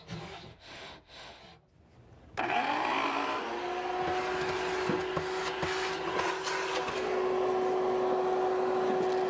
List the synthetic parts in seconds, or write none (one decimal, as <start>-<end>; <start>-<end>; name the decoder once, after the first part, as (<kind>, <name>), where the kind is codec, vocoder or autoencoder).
0.5-1.4 (autoencoder, DAC-VAE)